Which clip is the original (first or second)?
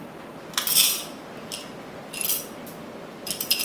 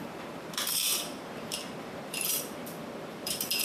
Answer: first